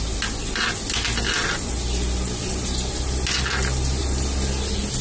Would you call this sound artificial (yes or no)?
no